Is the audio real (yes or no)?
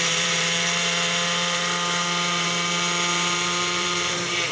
no